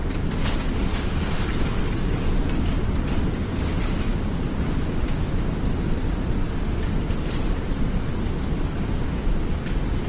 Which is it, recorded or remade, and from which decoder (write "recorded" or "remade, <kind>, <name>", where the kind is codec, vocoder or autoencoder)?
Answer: recorded